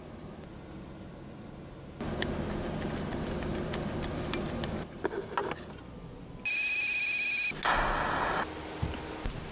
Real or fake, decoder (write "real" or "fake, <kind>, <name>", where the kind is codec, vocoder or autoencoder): real